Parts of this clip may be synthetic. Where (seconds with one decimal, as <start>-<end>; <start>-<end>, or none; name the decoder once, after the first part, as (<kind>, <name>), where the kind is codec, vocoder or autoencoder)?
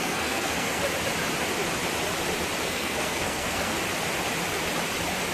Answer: 0.0-0.8 (codec, SNAC); 2.6-3.7